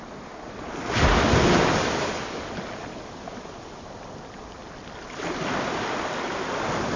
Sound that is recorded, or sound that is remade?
recorded